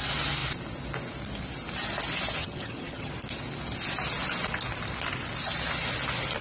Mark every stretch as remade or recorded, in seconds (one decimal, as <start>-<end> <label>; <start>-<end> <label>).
0.0-2.4 recorded; 2.4-3.1 remade; 3.1-6.4 recorded